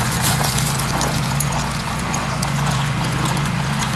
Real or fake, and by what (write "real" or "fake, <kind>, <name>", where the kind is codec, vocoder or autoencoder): fake, vocoder, Vocos